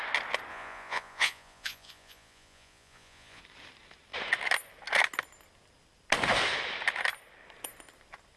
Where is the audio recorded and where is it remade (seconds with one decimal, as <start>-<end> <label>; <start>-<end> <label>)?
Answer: 0.0-0.5 recorded; 0.5-3.4 remade; 3.4-8.4 recorded